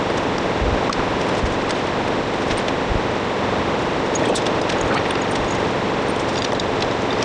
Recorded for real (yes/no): yes